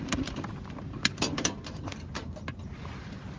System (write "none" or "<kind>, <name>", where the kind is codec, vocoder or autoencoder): none